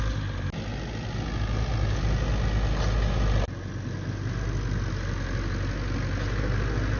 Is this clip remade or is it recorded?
recorded